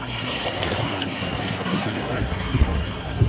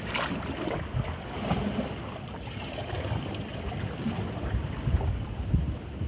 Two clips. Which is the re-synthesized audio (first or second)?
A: first